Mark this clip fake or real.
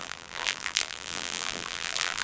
fake